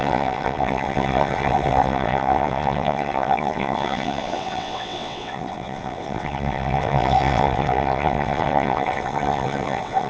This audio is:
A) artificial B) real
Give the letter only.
A